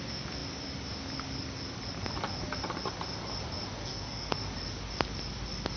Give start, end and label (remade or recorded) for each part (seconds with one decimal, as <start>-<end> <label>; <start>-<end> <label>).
0.0-3.8 recorded; 3.8-4.3 remade; 4.3-5.8 recorded